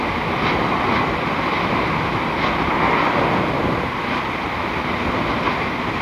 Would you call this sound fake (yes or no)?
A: no